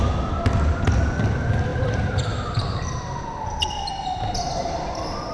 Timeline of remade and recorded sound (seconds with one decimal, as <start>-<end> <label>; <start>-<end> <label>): 0.0-1.7 recorded; 1.7-2.8 remade; 2.8-5.3 recorded